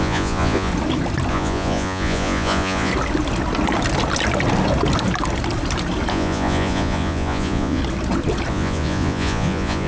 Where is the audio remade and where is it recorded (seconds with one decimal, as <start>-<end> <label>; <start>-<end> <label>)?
0.0-0.7 remade; 0.7-1.3 recorded; 1.3-2.9 remade; 2.9-6.1 recorded; 6.1-7.8 remade; 7.8-8.5 recorded; 8.5-9.9 remade